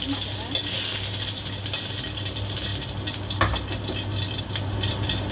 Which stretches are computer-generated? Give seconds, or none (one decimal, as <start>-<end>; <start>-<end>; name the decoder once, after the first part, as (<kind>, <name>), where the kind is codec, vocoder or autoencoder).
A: none